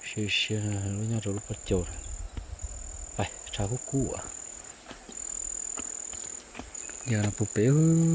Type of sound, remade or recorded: recorded